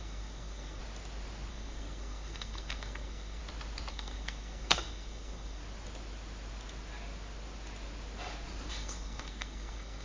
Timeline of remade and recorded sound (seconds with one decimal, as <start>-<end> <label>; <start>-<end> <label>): 0.0-0.8 remade; 0.8-1.5 recorded; 1.5-3.4 remade; 3.4-3.9 recorded; 3.9-5.6 remade; 5.6-8.7 recorded; 8.7-10.0 remade